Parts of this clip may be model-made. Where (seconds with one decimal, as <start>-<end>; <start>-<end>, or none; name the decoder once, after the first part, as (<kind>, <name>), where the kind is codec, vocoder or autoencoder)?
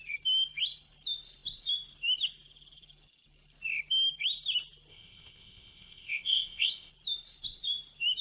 4.9-6.9 (codec, ZipCodec)